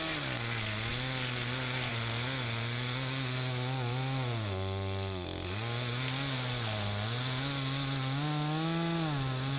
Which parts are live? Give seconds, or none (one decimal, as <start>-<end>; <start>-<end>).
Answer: 0.0-9.6